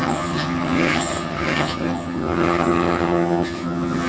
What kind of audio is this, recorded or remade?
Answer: remade